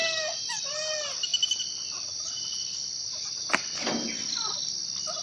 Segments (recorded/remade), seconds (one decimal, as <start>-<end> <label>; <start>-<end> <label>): 0.0-5.2 recorded